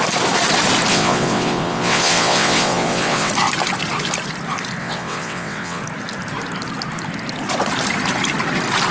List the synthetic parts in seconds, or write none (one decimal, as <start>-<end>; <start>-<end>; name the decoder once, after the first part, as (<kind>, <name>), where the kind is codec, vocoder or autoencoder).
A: 0.9-3.3 (vocoder, WaveNeXt); 4.8-5.8